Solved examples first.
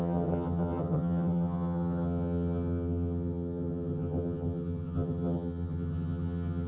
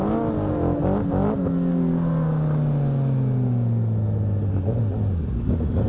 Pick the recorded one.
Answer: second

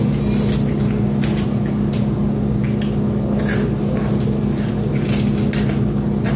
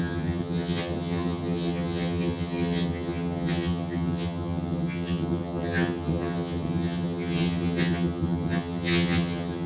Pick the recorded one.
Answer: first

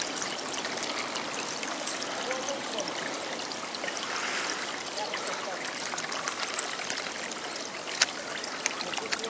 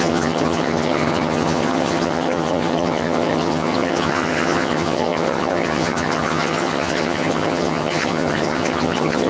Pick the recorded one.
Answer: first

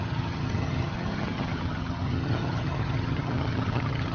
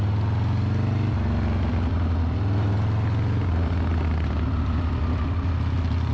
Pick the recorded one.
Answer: second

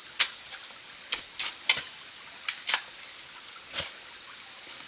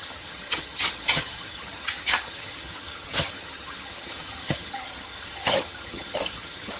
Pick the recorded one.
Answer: first